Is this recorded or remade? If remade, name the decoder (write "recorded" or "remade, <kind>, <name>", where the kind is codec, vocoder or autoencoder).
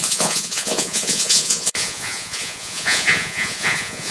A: remade, vocoder, Vocos